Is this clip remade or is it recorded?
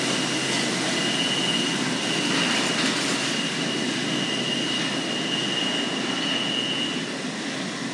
recorded